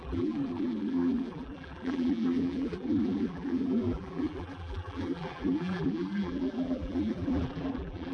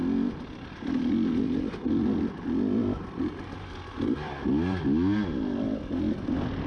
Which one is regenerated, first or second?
first